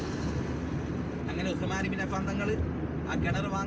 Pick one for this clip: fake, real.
real